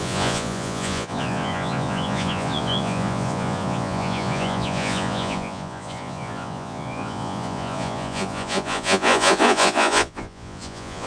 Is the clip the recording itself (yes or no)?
no